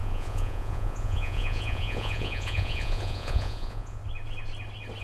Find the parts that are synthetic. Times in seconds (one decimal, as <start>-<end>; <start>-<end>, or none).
0.0-4.0